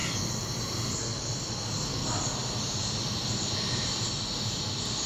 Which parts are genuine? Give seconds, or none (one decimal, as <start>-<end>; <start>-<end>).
0.0-2.4; 3.2-5.1